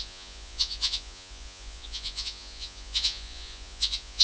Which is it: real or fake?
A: fake